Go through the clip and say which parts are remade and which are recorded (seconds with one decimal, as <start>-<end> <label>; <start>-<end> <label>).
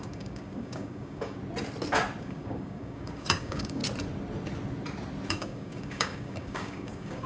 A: 0.0-1.4 remade; 1.4-2.2 recorded; 2.2-3.8 remade; 3.8-5.3 recorded; 5.3-7.3 remade